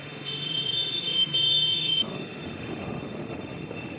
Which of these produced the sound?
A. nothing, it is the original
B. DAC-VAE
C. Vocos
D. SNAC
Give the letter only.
B